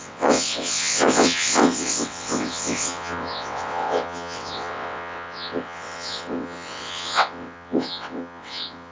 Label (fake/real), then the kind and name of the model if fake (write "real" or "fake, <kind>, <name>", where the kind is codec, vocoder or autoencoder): fake, vocoder, WaveNeXt